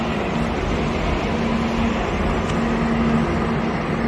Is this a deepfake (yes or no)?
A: no